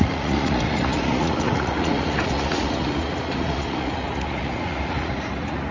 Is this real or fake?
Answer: fake